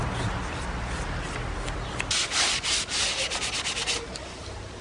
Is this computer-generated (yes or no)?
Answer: no